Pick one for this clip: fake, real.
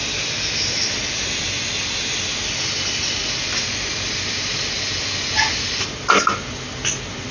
real